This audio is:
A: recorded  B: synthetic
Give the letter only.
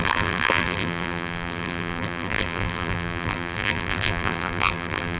B